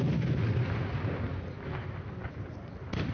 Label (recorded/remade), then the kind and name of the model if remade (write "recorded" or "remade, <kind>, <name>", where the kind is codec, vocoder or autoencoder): recorded